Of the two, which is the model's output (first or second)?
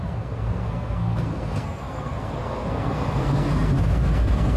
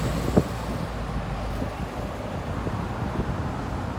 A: first